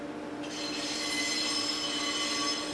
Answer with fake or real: real